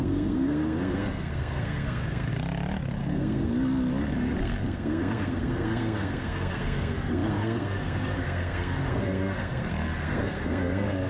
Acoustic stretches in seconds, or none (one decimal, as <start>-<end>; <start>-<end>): 2.3-3.0; 3.5-4.4